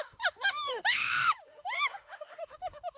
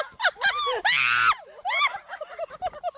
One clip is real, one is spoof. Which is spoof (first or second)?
first